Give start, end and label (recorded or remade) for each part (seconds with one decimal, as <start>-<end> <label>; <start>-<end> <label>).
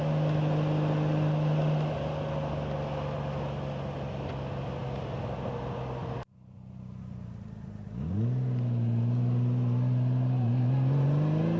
0.0-11.6 recorded